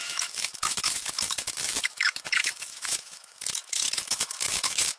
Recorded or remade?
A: remade